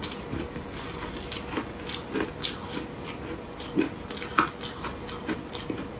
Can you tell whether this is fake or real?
real